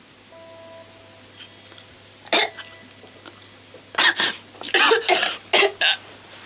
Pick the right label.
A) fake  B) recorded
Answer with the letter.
B